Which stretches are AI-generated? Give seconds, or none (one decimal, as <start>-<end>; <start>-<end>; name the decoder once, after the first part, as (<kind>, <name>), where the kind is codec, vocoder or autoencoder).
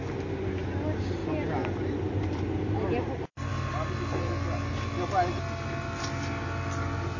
none